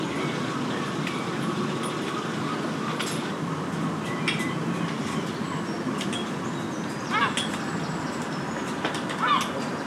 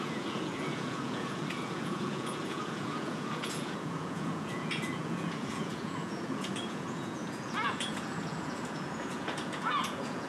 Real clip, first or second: first